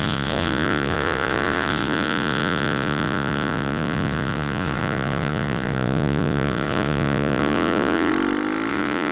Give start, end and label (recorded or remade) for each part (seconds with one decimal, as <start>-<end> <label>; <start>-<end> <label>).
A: 0.0-8.1 remade; 8.1-8.7 recorded; 8.7-9.1 remade